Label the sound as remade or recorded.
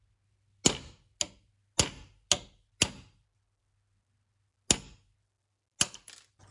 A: recorded